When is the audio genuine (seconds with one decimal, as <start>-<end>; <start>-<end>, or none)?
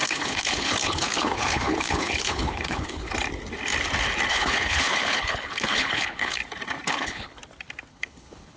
3.1-4.3; 6.4-6.9; 7.4-7.9